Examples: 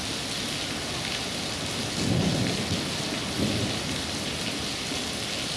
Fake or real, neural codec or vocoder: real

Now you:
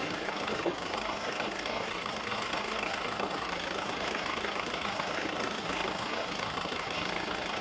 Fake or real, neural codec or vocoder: fake, codec, SNAC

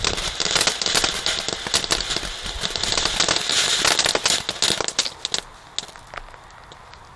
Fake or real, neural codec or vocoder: real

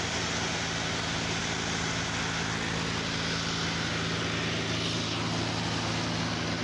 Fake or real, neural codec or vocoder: real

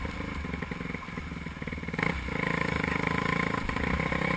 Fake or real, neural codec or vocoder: real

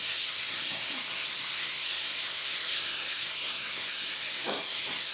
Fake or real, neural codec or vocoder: fake, codec, SNAC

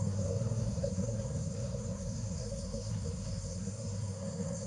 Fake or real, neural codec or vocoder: fake, codec, SNAC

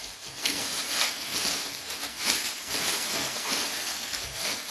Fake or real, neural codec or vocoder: fake, codec, SNAC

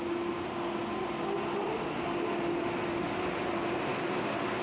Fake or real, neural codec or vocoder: real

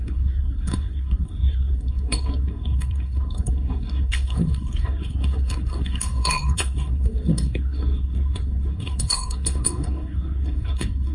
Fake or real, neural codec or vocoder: fake, codec, SNAC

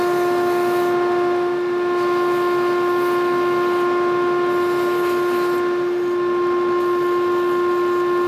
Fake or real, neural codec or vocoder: real